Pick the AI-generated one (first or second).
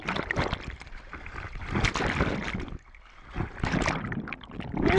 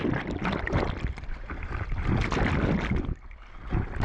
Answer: first